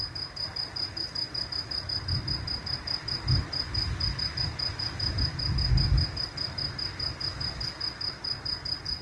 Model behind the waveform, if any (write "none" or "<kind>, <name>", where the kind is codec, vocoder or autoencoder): none